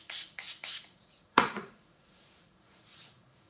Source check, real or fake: fake